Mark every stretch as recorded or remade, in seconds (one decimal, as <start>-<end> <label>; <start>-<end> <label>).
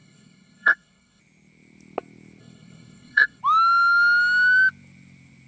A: 0.0-1.2 remade; 1.2-2.4 recorded; 2.4-3.4 remade; 3.4-5.5 recorded